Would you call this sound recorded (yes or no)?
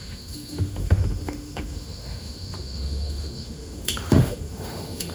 no